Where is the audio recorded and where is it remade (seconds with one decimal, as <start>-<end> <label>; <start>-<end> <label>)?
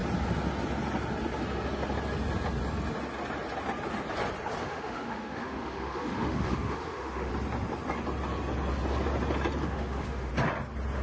0.0-4.6 recorded; 4.6-7.3 remade; 7.3-9.6 recorded; 9.6-10.3 remade; 10.3-11.0 recorded